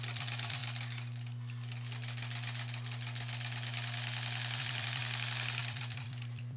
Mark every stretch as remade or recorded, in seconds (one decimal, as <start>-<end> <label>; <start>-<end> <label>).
0.0-0.6 remade; 0.6-4.6 recorded; 4.6-5.0 remade; 5.0-5.6 recorded; 5.6-6.6 remade